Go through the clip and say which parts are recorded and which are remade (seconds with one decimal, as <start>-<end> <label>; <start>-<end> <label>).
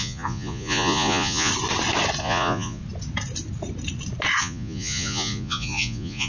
0.0-1.5 remade; 1.5-2.2 recorded; 2.2-2.8 remade; 2.8-4.4 recorded; 4.4-6.3 remade